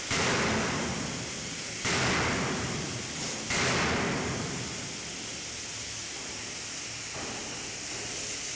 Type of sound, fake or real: real